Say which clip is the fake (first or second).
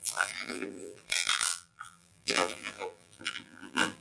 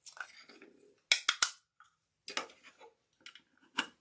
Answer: first